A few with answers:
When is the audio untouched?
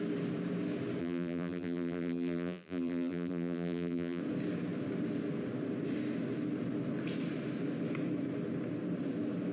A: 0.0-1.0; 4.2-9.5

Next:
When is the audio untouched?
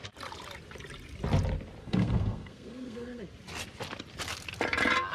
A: 0.0-1.8; 3.2-5.1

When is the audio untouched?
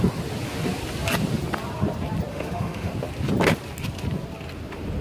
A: 0.0-2.3; 2.9-5.0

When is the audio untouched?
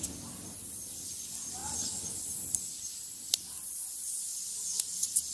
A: 0.0-5.3